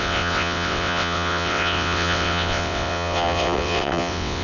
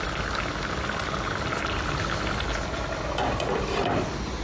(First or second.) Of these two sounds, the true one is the second